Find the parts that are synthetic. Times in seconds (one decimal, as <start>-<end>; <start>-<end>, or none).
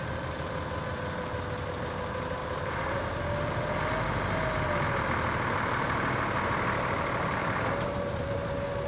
2.4-3.0; 7.4-8.5